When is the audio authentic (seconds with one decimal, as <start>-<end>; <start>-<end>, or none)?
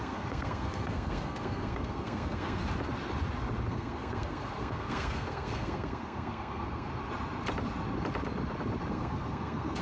2.6-3.7; 6.9-8.9